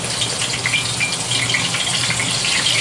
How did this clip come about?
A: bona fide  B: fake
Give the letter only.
A